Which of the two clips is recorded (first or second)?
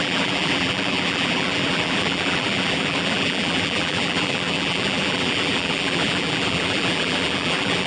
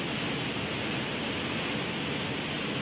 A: second